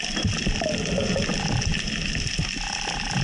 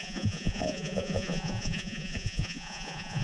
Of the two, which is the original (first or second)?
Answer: first